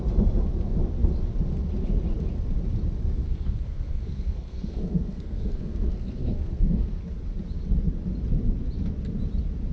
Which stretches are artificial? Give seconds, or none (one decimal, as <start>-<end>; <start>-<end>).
3.2-7.0